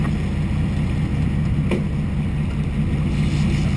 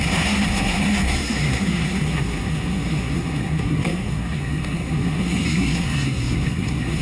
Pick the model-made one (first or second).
second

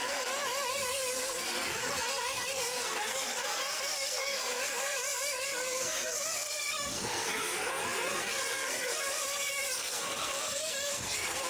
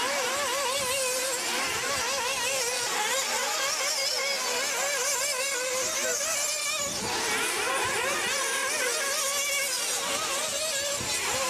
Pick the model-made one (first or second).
first